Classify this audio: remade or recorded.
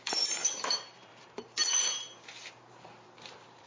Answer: remade